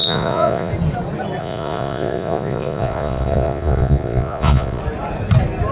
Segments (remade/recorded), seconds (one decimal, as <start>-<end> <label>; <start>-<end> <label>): 0.0-0.7 remade; 0.7-1.4 recorded; 1.4-4.8 remade; 4.8-5.7 recorded